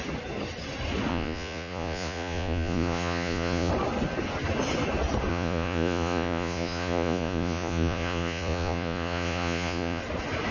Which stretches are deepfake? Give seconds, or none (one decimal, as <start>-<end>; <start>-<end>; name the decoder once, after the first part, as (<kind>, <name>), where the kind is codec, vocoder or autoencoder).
1.1-3.7 (vocoder, Vocos); 5.3-10.0